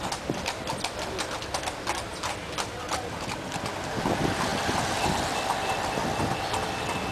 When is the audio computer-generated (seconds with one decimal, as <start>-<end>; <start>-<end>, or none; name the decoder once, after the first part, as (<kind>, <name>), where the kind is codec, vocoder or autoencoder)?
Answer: 2.1-2.8 (vocoder, BigVGAN v2)